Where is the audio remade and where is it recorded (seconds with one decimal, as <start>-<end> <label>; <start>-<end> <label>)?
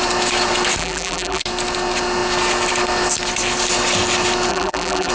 0.0-0.8 recorded; 0.8-1.4 remade; 1.4-4.5 recorded; 4.5-5.1 remade